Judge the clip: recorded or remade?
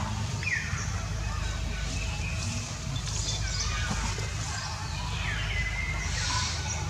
recorded